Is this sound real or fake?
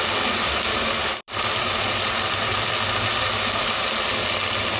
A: real